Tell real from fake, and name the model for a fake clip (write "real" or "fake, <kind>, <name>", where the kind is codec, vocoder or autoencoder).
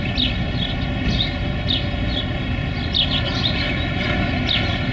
real